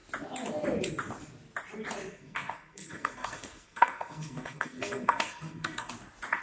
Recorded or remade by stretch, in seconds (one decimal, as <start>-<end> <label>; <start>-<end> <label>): 0.0-2.1 recorded; 2.1-5.9 remade; 5.9-6.4 recorded